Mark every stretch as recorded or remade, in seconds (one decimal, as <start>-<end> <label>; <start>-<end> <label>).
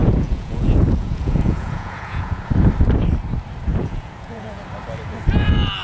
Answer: 0.0-2.4 remade; 2.4-3.7 recorded; 3.7-4.6 remade; 4.6-5.8 recorded